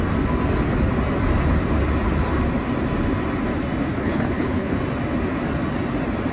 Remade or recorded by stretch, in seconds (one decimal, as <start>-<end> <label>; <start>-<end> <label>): 0.0-3.9 recorded; 3.9-4.7 remade; 4.7-6.3 recorded